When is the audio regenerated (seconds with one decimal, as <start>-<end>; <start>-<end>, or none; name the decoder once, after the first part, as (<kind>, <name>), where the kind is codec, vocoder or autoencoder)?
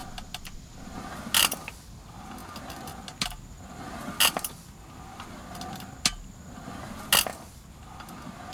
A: none